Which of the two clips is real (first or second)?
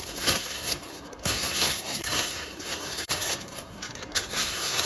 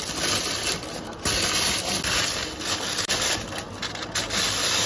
second